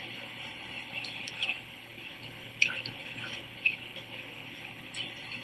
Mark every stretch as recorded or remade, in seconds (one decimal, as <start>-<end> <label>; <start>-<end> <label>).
0.0-5.4 remade